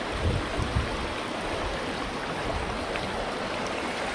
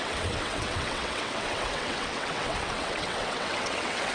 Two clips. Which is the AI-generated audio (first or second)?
second